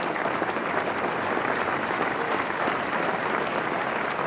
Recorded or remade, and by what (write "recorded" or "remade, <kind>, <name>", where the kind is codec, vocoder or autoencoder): remade, vocoder, BigVGAN v2